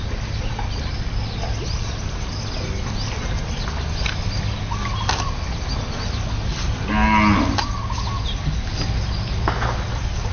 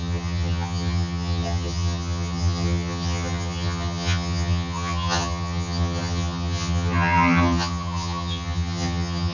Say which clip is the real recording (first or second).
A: first